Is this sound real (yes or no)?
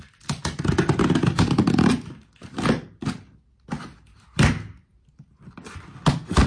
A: yes